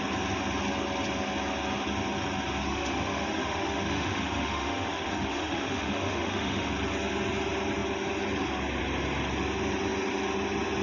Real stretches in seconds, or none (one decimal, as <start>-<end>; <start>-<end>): 0.0-2.7; 6.7-10.8